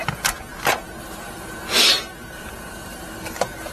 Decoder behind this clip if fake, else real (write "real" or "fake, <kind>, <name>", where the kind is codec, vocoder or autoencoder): real